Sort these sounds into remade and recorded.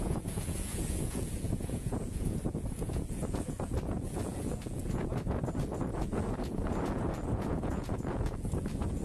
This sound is remade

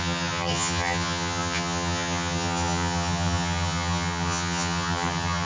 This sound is remade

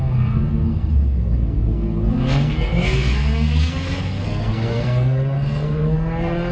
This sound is remade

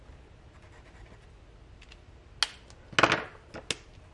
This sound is recorded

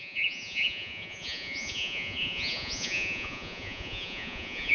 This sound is remade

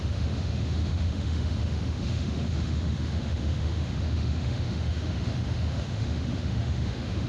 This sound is remade